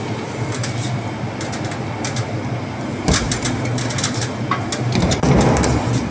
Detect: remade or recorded recorded